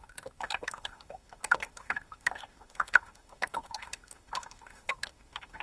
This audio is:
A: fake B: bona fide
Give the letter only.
A